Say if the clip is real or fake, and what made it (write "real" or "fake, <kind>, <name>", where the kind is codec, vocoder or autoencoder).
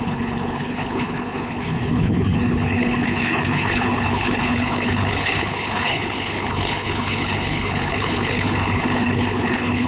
fake, codec, HILCodec